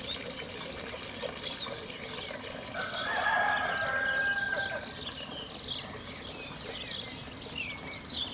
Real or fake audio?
real